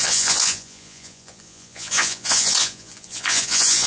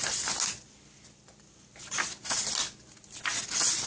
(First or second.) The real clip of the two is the second